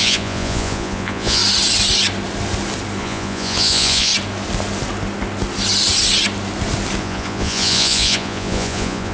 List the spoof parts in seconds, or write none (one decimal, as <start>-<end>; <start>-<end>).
0.0-1.4; 3.0-4.1; 7.0-9.1